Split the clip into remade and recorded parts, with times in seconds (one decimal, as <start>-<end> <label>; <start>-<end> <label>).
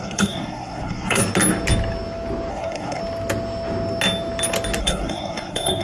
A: 0.0-1.2 remade; 1.2-2.5 recorded; 2.5-3.0 remade; 3.0-4.8 recorded; 4.8-5.8 remade